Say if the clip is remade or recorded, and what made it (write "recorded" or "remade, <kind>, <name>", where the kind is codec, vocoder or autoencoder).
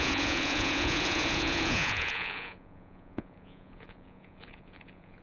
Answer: remade, vocoder, Vocos